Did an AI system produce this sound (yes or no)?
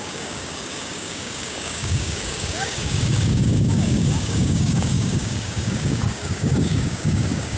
yes